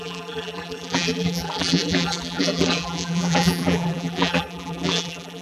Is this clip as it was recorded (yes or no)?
no